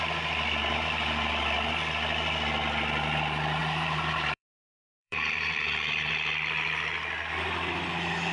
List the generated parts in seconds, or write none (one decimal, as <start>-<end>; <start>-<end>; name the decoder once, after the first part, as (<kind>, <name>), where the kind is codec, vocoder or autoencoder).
3.6-6.1 (vocoder, BigVGAN v2)